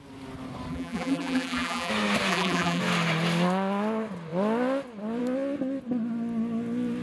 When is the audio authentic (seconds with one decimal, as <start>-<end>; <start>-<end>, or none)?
0.0-0.7; 1.9-2.3; 2.8-7.0